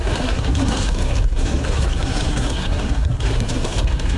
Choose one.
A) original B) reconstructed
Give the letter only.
B